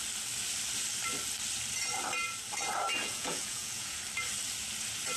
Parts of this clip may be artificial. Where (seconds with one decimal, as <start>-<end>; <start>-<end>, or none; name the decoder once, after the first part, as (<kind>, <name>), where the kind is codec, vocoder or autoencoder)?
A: 3.0-4.0 (vocoder, Vocos)